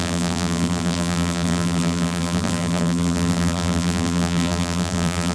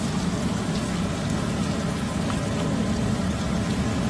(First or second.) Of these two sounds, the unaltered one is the second